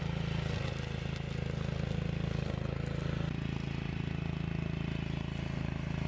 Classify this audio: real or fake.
real